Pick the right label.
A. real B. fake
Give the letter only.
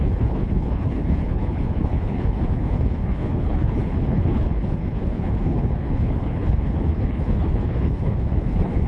B